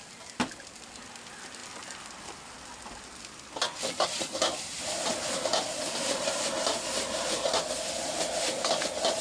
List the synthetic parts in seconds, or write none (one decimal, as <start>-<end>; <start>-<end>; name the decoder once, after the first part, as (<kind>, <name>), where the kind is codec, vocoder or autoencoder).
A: none